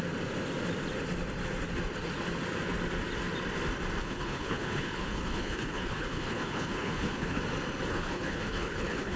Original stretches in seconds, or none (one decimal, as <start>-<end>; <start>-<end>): 0.0-4.0; 7.4-7.9